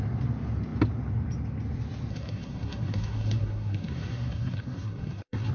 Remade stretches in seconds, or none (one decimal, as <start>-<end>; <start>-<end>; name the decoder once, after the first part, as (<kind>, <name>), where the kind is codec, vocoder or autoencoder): 2.1-5.5 (codec, SNAC)